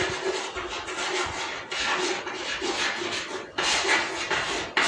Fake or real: real